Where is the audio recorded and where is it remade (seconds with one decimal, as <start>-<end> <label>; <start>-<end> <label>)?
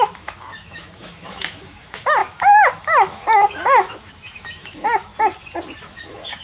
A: 0.0-5.1 remade; 5.1-5.8 recorded; 5.8-6.4 remade